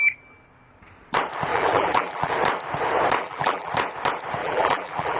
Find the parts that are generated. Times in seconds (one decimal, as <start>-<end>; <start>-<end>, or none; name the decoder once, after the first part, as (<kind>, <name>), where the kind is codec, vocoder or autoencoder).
1.5-2.3 (vocoder, BigVGAN v2); 3.2-3.7; 4.4-5.2